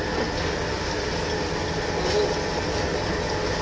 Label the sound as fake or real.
real